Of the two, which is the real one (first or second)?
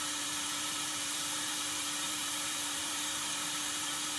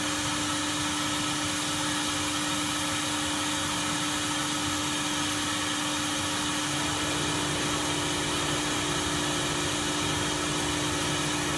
second